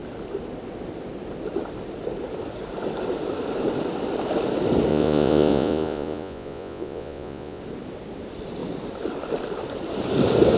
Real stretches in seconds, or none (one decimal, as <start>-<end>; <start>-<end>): 0.0-4.9; 7.6-10.6